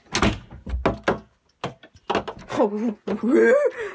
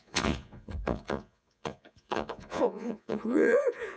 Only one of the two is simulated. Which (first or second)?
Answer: second